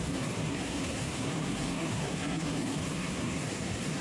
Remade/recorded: remade